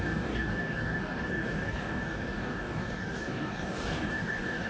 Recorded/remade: remade